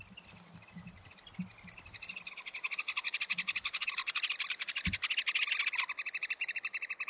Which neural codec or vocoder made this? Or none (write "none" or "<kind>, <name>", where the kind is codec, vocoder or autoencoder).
none